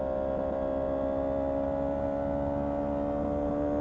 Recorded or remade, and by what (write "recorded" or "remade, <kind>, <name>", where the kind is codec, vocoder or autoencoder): recorded